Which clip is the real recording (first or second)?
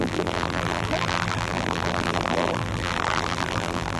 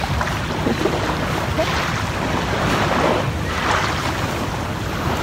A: second